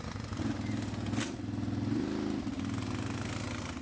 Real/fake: real